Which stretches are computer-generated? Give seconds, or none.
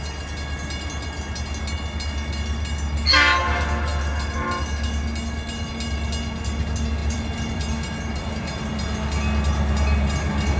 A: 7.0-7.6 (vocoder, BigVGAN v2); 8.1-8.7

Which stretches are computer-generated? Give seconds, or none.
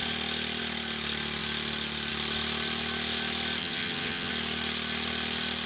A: 3.6-4.3 (vocoder, HiFi-GAN)